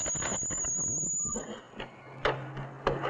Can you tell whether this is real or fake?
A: real